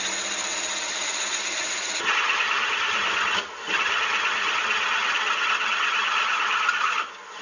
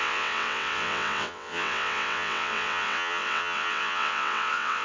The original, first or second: first